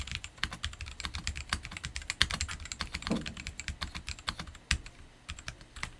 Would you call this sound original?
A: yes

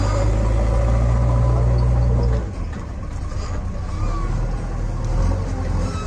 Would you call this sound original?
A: yes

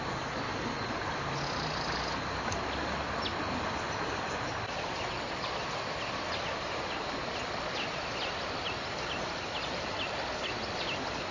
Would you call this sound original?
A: yes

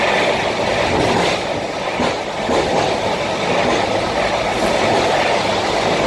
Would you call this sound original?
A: yes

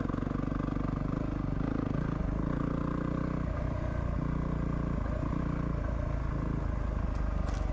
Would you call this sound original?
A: yes